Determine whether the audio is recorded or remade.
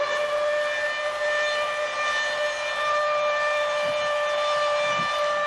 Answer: recorded